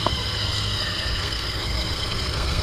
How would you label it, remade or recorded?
remade